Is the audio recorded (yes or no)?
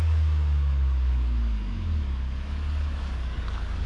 no